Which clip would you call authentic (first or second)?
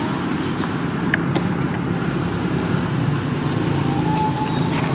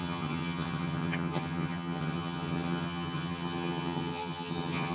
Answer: first